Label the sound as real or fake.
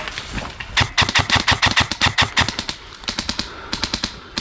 real